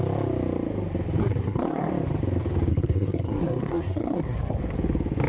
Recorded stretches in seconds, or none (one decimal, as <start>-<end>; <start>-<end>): 0.0-1.2; 1.9-2.7; 4.6-5.3